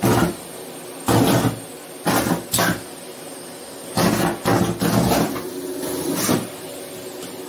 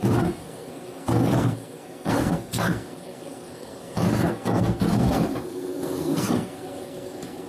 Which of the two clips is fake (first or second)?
second